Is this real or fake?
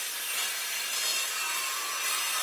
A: real